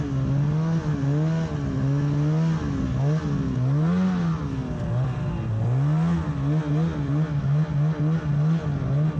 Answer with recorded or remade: recorded